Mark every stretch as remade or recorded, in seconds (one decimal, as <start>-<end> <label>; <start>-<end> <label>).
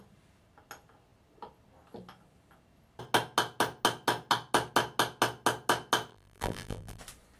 0.0-6.1 recorded; 6.1-7.0 remade; 7.0-7.4 recorded